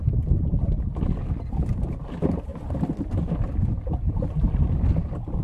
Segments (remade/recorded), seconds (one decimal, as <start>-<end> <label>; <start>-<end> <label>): 0.0-5.4 recorded